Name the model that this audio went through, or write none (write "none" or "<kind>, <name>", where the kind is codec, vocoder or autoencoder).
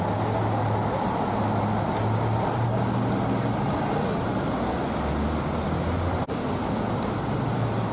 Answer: none